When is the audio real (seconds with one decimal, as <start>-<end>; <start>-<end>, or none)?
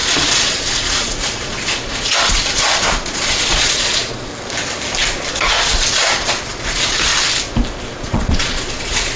4.3-5.3; 7.1-8.0